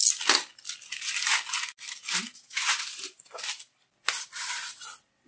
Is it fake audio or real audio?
real